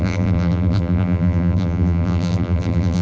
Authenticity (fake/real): fake